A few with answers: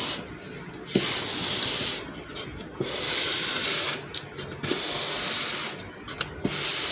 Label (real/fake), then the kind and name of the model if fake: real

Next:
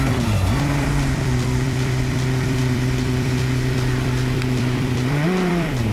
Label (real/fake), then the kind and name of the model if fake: fake, vocoder, BigVGAN v2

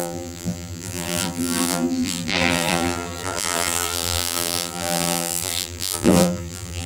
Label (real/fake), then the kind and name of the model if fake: fake, vocoder, BigVGAN v2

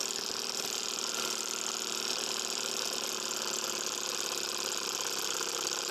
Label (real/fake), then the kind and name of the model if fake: fake, vocoder, BigVGAN v2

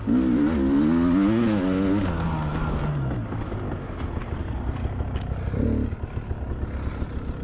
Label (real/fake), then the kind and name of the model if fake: real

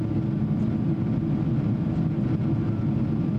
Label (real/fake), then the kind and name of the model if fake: real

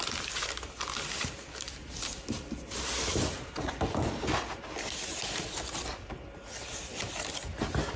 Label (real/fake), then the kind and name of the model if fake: real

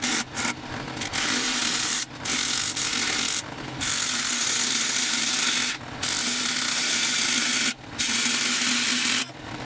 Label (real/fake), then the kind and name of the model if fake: real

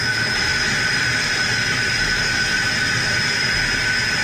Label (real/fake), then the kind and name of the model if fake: real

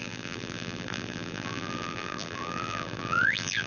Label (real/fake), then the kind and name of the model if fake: fake, vocoder, BigVGAN v2